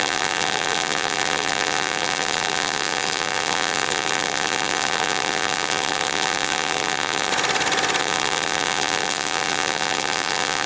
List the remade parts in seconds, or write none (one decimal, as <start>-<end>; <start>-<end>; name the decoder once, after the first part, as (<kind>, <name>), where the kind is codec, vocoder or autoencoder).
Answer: 0.0-7.3 (vocoder, BigVGAN v2); 8.0-10.7